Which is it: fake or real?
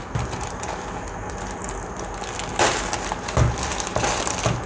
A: real